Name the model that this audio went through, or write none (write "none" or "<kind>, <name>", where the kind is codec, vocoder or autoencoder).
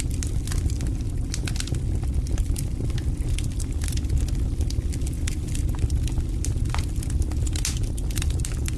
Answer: none